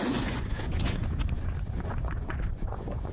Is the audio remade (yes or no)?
yes